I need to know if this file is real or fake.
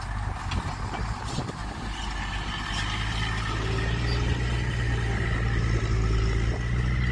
real